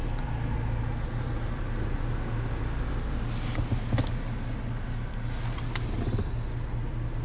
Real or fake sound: real